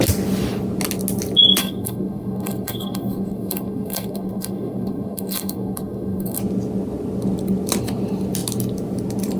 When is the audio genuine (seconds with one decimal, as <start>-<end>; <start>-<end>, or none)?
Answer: 0.0-1.6; 6.4-9.4